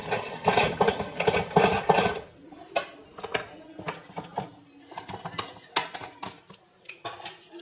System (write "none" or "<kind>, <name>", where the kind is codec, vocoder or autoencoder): none